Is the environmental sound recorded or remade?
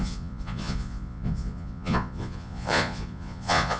remade